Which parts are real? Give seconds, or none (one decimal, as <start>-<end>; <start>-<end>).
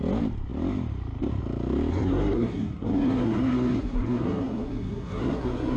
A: 0.0-1.9